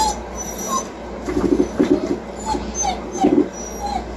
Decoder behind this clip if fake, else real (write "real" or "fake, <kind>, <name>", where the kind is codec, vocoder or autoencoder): real